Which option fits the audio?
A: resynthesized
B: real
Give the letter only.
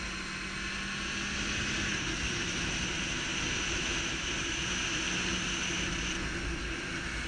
B